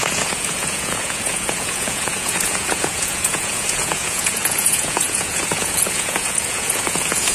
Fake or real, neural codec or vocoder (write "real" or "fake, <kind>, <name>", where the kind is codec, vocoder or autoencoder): fake, vocoder, Vocos